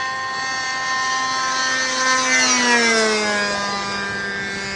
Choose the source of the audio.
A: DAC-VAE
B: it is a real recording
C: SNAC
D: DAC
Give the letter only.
B